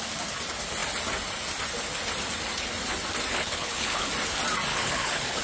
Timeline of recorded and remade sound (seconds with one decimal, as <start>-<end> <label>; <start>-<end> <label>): 0.0-3.3 recorded; 3.3-4.1 remade; 4.1-4.7 recorded; 4.7-5.4 remade